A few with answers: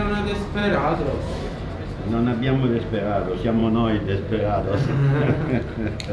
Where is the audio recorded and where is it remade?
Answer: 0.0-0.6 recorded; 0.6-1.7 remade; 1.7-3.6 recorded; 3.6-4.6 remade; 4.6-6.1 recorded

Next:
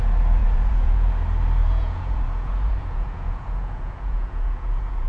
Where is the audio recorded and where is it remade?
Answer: 0.0-0.4 recorded; 0.4-1.1 remade; 1.1-1.6 recorded; 1.6-5.1 remade

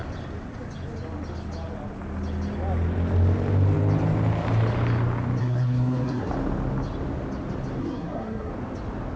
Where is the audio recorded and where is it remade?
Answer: 0.0-5.4 recorded; 5.4-6.3 remade; 6.3-7.8 recorded; 7.8-8.5 remade; 8.5-9.2 recorded

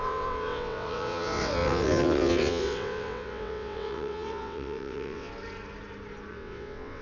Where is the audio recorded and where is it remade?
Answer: 0.0-5.3 remade; 5.3-6.3 recorded; 6.3-7.0 remade

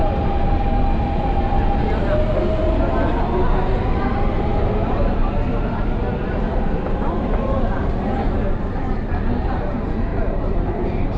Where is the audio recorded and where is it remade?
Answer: 0.0-10.1 recorded; 10.1-11.2 remade